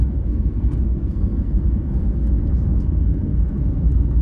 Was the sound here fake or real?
fake